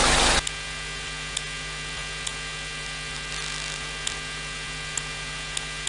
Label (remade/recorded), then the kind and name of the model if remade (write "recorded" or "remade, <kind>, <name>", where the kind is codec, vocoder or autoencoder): recorded